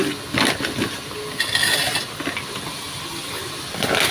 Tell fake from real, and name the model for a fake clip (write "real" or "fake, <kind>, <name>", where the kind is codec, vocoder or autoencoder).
real